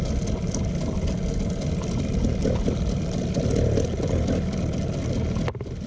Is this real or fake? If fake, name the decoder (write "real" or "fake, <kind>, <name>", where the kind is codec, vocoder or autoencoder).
real